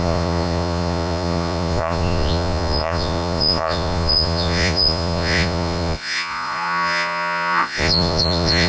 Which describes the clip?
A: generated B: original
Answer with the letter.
A